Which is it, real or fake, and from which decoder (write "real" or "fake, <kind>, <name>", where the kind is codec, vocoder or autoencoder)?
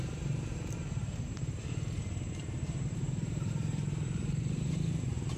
fake, vocoder, BigVGAN v2